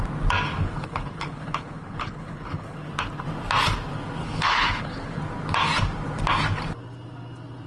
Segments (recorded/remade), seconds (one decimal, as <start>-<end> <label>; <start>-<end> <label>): 0.0-0.6 recorded; 0.6-2.9 remade; 2.9-4.2 recorded; 4.2-5.2 remade; 5.2-7.7 recorded